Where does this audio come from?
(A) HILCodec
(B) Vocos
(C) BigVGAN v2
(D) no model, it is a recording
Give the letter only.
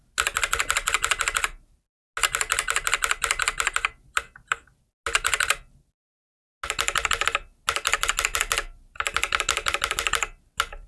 D